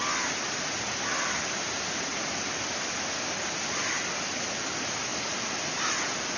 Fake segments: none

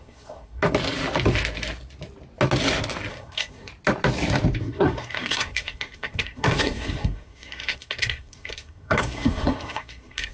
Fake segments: 0.0-0.6 (codec, SNAC); 3.1-3.7; 4.6-10.3

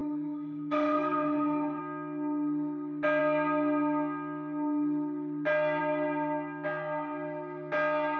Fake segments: 0.0-1.8 (codec, SNAC)

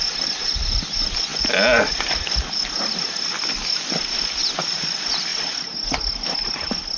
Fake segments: none

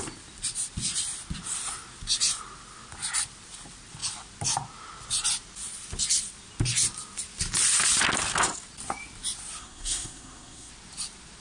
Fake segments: 9.6-10.7 (codec, SNAC)

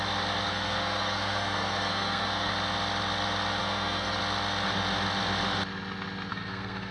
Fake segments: 0.5-2.5 (codec, SNAC); 3.6-4.2; 6.3-6.9

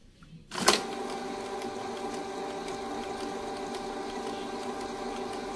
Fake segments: none